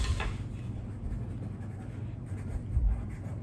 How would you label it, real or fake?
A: real